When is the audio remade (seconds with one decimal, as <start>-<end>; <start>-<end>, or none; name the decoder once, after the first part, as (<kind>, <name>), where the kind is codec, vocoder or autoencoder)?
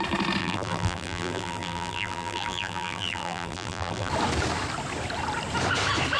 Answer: 0.4-4.1 (vocoder, BigVGAN v2)